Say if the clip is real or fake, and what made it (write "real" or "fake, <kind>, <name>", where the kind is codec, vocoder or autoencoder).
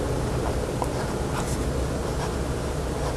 real